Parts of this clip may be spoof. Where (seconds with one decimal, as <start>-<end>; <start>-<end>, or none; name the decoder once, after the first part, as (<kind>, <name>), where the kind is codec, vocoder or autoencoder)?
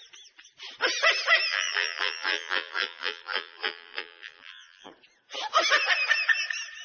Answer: 1.5-4.9 (vocoder, BigVGAN v2)